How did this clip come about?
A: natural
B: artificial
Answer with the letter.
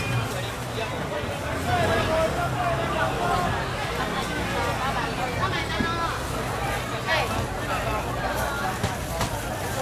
A